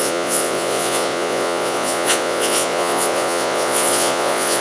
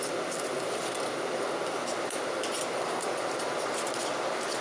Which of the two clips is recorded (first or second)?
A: second